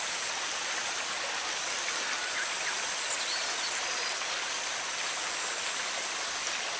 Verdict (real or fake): real